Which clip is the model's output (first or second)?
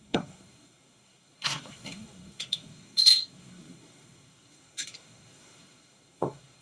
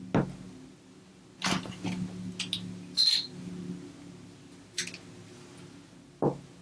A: first